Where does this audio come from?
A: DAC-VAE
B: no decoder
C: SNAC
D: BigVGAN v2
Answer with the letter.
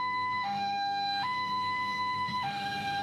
A